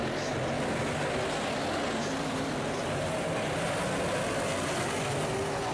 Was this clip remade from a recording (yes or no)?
no